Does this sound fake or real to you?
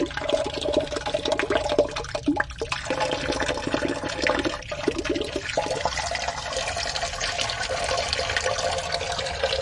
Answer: real